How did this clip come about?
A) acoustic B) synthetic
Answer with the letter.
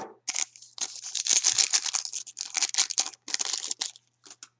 A